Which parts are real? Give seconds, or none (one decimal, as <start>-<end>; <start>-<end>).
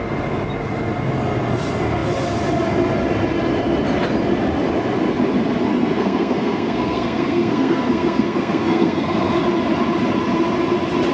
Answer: 0.0-5.7; 9.4-11.1